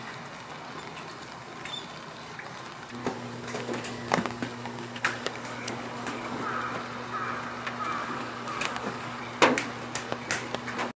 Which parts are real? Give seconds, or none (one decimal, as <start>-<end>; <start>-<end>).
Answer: 0.0-3.0; 6.4-8.0; 9.2-11.0